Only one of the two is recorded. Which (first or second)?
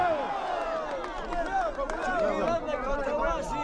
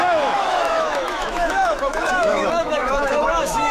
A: first